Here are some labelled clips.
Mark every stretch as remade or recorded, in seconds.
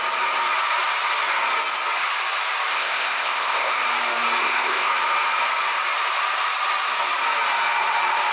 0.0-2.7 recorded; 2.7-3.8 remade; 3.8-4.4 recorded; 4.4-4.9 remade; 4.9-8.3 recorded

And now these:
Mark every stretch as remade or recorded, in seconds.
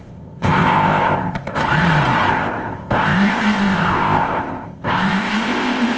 0.0-1.6 remade; 1.6-2.3 recorded; 2.3-6.0 remade